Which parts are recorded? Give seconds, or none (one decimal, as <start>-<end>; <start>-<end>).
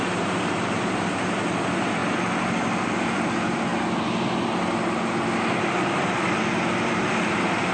2.0-2.8; 3.7-6.9